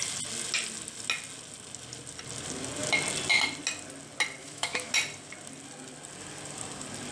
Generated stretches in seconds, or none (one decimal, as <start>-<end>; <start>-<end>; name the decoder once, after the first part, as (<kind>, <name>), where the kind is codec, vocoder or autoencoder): 4.4-4.9 (autoencoder, DAC-VAE)